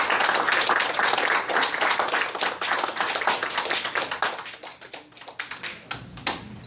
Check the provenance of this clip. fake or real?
real